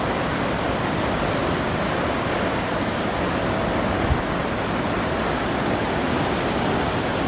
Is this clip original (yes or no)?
yes